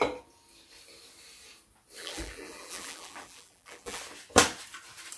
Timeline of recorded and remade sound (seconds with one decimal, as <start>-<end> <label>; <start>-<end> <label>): 0.0-2.0 recorded; 2.0-4.0 remade; 4.0-5.2 recorded